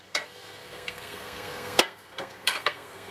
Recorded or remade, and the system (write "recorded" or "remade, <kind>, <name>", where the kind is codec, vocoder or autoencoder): remade, codec, SNAC